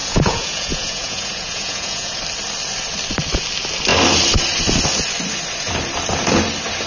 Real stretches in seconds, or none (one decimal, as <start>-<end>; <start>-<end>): 2.2-6.9